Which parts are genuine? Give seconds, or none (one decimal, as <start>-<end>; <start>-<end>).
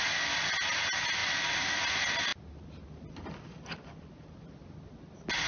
0.0-5.5